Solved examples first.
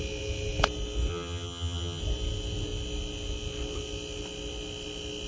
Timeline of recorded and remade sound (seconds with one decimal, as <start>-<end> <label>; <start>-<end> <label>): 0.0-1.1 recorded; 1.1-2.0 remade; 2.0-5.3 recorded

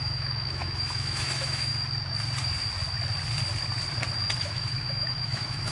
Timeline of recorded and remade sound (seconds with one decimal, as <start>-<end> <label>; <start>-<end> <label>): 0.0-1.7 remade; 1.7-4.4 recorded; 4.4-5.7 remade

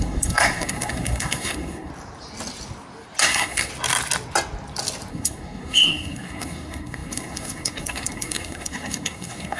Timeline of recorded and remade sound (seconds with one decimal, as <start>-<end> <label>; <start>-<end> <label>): 0.0-1.9 remade; 1.9-3.2 recorded; 3.2-3.7 remade; 3.7-5.1 recorded; 5.1-9.6 remade

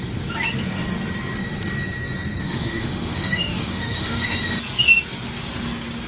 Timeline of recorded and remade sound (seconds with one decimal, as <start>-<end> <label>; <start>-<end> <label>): 0.0-2.4 recorded; 2.4-4.4 remade; 4.4-6.1 recorded